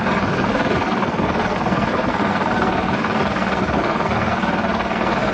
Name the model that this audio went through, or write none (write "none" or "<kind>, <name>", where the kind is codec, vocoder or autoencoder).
codec, SNAC